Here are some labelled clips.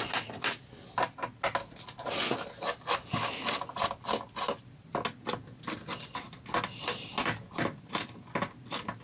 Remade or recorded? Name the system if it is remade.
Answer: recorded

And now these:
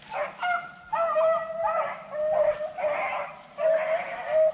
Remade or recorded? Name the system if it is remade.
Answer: recorded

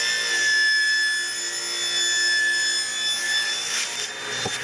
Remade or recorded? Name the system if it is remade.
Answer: recorded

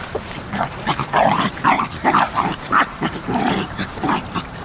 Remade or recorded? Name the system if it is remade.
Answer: remade, vocoder, BigVGAN v2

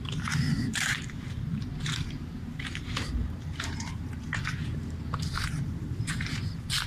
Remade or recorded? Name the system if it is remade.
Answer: remade, vocoder, BigVGAN v2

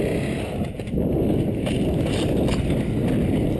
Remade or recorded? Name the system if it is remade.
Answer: recorded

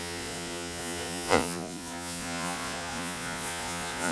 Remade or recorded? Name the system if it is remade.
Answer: remade, vocoder, Vocos